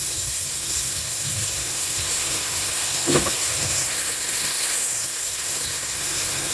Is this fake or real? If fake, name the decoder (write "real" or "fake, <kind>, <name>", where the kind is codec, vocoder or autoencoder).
fake, codec, SNAC